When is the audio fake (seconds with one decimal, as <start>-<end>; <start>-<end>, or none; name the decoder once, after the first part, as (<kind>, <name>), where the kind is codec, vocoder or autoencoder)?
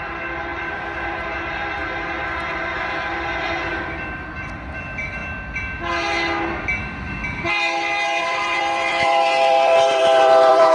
0.0-0.5 (vocoder, BigVGAN v2); 3.7-5.2; 8.2-10.7